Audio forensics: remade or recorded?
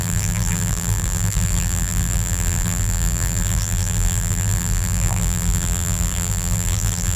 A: remade